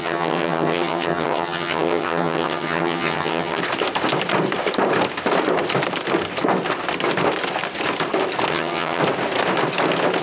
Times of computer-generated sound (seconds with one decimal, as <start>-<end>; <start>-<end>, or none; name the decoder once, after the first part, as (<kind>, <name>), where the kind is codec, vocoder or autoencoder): 0.0-3.6 (vocoder, HiFi-GAN); 8.5-9.0